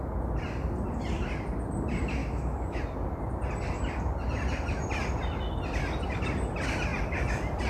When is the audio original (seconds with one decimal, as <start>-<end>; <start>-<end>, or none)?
0.0-2.2; 2.8-7.7